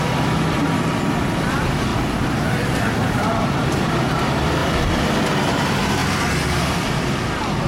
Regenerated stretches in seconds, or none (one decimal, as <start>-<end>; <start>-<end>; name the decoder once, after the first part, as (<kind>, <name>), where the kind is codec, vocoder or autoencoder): 1.9-3.8 (vocoder, BigVGAN v2); 4.6-5.2